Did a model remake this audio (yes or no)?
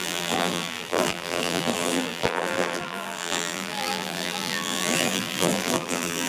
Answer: yes